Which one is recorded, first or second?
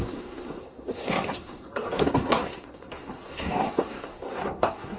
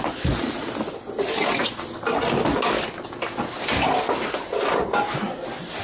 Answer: second